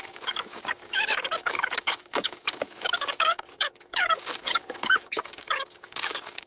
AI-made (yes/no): yes